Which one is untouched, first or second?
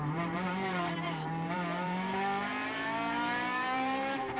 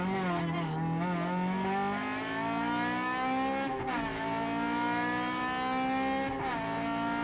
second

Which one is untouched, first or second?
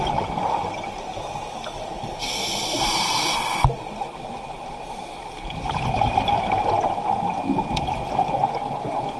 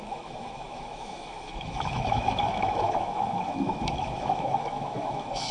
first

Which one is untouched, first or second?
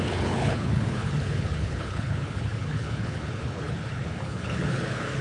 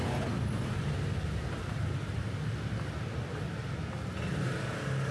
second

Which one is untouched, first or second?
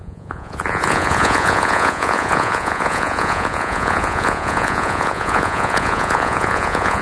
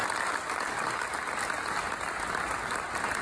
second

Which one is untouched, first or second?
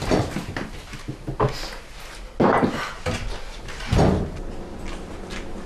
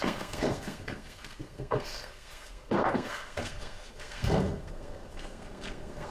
first